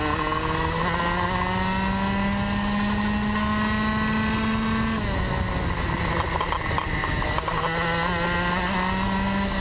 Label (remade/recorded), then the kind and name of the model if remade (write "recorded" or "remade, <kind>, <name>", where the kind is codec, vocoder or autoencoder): recorded